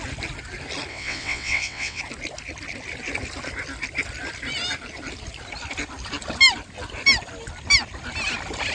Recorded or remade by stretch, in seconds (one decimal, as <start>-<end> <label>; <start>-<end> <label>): 0.0-0.9 recorded; 0.9-2.0 remade; 2.0-8.7 recorded

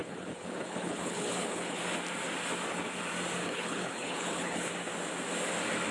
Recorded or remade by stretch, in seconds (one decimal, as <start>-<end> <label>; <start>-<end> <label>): 0.0-1.8 remade; 1.8-3.4 recorded; 3.4-4.7 remade; 4.7-5.9 recorded

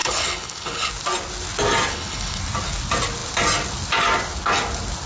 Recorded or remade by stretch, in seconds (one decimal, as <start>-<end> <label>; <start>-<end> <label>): 0.0-0.9 remade; 0.9-1.9 recorded; 1.9-2.4 remade; 2.4-5.1 recorded

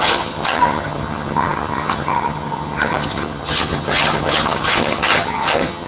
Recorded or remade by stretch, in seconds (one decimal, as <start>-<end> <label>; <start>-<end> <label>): 0.0-5.9 remade

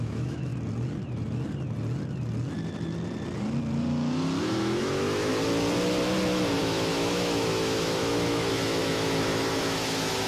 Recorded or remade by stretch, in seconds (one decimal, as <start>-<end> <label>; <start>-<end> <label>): 0.0-0.5 remade; 0.5-4.4 recorded; 4.4-5.3 remade; 5.3-6.6 recorded; 6.6-10.3 remade

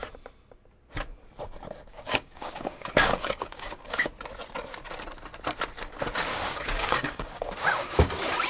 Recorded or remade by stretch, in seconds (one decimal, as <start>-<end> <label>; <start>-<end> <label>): 0.0-1.9 recorded; 1.9-4.1 remade; 4.1-6.3 recorded; 6.3-8.1 remade; 8.1-8.5 recorded

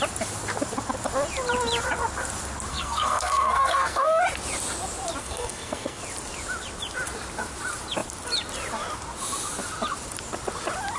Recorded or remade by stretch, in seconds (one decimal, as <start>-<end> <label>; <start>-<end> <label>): 0.0-2.7 recorded; 2.7-4.2 remade; 4.2-5.2 recorded; 5.2-6.0 remade; 6.0-11.0 recorded